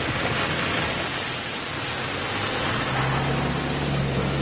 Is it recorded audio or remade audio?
recorded